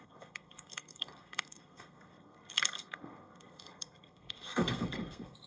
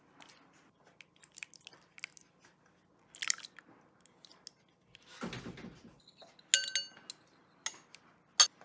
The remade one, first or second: first